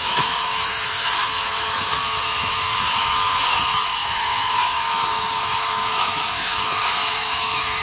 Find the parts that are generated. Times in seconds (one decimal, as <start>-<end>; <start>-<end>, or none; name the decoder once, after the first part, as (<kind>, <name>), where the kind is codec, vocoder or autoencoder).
0.0-7.8 (autoencoder, DAC-VAE)